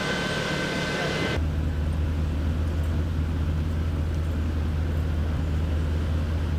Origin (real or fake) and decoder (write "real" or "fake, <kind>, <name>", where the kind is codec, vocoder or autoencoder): real